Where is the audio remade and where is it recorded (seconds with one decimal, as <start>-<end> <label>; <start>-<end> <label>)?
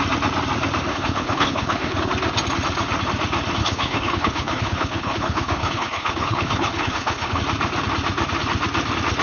0.0-0.9 recorded; 0.9-2.1 remade; 2.1-3.6 recorded; 3.6-7.4 remade; 7.4-9.2 recorded